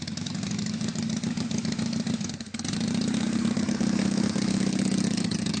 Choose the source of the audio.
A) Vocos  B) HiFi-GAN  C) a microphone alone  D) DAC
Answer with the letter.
D